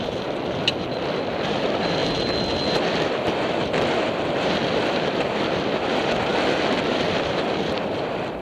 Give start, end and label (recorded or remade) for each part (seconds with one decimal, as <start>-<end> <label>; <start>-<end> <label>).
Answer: 0.0-2.0 remade; 2.0-2.7 recorded; 2.7-6.3 remade; 6.3-7.1 recorded; 7.1-8.4 remade